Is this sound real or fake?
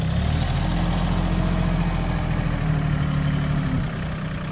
real